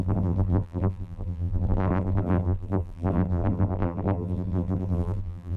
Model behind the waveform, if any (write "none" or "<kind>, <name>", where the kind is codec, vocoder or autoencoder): vocoder, BigVGAN v2